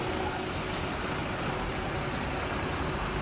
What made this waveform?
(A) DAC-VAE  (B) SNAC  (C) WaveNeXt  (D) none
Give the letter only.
D